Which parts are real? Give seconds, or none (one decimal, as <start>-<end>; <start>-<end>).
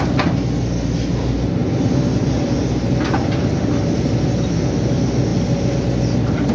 0.0-6.5